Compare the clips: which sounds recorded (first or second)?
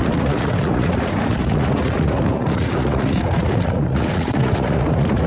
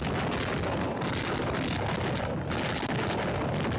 second